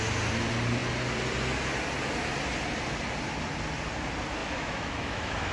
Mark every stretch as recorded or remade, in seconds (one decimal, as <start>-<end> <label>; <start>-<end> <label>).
0.0-4.4 recorded; 4.4-5.5 remade

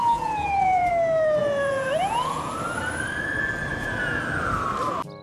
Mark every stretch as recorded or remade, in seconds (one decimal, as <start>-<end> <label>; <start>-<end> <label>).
0.0-0.9 remade; 0.9-1.4 recorded; 1.4-2.5 remade; 2.5-3.7 recorded; 3.7-4.2 remade; 4.2-5.2 recorded

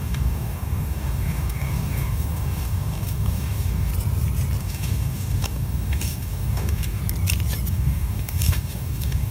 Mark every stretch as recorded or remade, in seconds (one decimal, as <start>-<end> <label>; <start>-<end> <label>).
0.0-3.9 remade; 3.9-4.6 recorded; 4.6-7.0 remade; 7.0-7.7 recorded; 7.7-9.3 remade

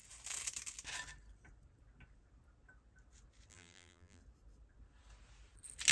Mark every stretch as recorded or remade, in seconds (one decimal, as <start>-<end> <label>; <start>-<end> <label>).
0.0-3.5 recorded; 3.5-4.2 remade; 4.2-5.9 recorded

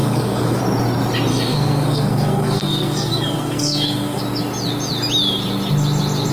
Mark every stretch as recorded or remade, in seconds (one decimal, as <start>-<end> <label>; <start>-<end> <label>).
0.0-0.6 remade; 0.6-1.3 recorded; 1.3-4.2 remade; 4.2-6.3 recorded

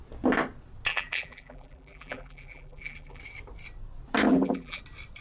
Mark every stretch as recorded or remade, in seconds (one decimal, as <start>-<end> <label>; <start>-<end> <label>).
0.0-0.9 recorded; 0.9-3.2 remade; 3.2-4.3 recorded; 4.3-4.8 remade; 4.8-5.2 recorded